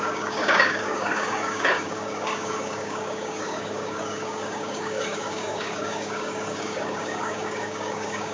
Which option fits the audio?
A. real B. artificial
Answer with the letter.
B